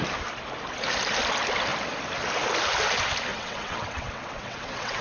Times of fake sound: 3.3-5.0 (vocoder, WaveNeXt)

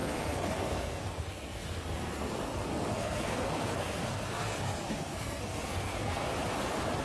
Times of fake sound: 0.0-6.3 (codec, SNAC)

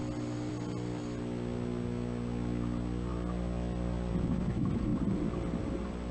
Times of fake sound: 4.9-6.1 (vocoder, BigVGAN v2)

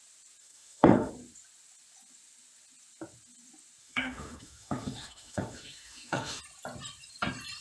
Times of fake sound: 0.4-1.1 (autoencoder, DAC-VAE); 3.8-6.4

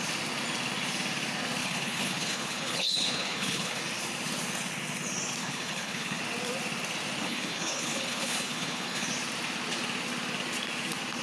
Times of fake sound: 1.6-3.8 (codec, HILCodec); 5.4-6.2; 7.2-9.1